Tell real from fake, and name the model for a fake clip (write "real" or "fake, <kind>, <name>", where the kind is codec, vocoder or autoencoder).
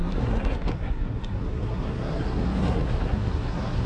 fake, codec, SNAC